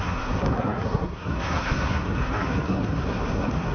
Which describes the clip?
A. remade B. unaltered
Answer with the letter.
A